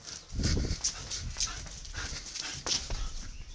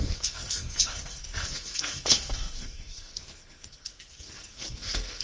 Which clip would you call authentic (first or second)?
first